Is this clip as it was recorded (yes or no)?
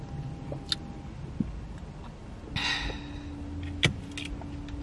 yes